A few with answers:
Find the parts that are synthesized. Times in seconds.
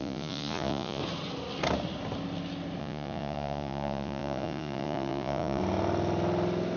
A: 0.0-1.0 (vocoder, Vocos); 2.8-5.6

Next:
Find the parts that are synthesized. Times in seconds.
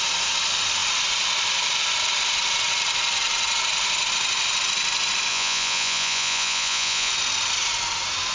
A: 5.3-7.1 (vocoder, Vocos)